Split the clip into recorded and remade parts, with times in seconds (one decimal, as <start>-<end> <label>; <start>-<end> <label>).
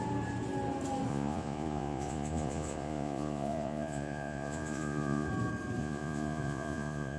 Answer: 0.0-1.1 recorded; 1.1-5.3 remade; 5.3-5.8 recorded; 5.8-7.2 remade